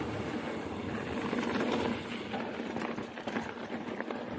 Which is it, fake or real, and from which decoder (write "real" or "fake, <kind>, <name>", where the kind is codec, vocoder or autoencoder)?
real